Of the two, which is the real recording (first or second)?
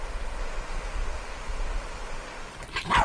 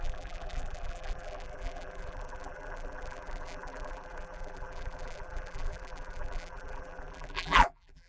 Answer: first